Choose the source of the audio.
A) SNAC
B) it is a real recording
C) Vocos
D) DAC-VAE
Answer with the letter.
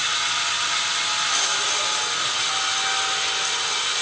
B